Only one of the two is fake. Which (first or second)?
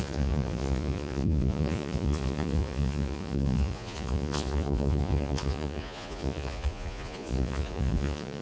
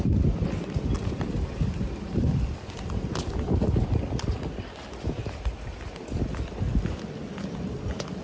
first